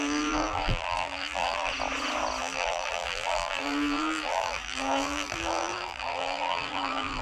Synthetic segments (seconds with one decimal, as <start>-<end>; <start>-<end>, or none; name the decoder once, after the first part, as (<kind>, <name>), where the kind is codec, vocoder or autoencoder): 0.0-1.7 (vocoder, BigVGAN v2); 2.4-7.2